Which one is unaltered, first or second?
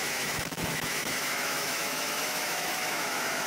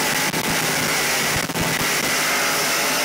second